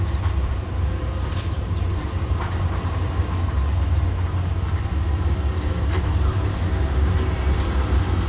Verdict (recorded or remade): recorded